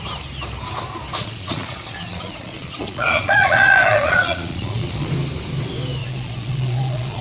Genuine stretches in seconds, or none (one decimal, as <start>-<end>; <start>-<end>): 0.0-1.2; 5.1-6.0